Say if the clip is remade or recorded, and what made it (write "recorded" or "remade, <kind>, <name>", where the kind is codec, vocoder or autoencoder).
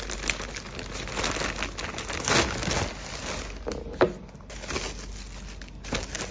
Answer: recorded